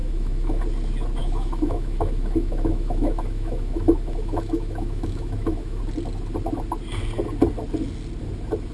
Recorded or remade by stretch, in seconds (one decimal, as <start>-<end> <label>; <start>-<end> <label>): 0.0-0.6 remade; 0.6-1.2 recorded; 1.2-5.8 remade; 5.8-8.7 recorded